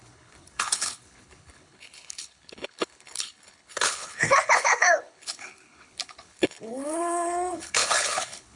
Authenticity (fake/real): fake